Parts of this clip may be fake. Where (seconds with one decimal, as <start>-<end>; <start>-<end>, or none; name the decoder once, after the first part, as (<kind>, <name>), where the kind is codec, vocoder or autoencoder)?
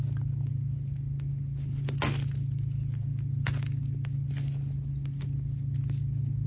none